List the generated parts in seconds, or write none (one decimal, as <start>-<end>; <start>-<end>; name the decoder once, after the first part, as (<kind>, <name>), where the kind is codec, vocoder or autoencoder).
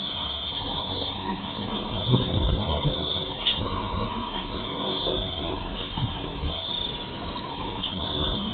0.0-6.7 (codec, SNAC); 7.5-8.5